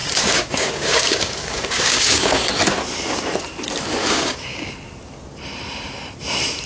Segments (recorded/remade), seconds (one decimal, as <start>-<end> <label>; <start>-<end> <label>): 0.0-2.5 remade; 2.5-4.0 recorded; 4.0-4.7 remade; 4.7-6.7 recorded